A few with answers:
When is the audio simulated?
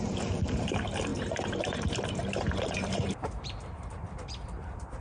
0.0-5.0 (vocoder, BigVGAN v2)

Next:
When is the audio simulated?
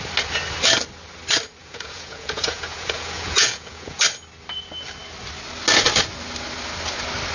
1.6-4.0 (vocoder, Vocos)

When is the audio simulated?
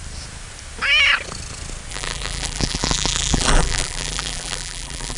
1.9-5.2 (vocoder, BigVGAN v2)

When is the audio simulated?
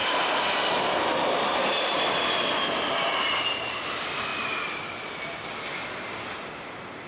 0.0-2.3 (vocoder, BigVGAN v2)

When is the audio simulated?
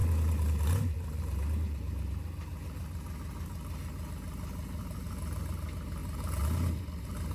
none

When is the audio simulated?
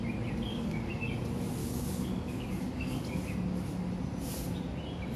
0.5-1.1 (codec, DAC); 1.6-3.2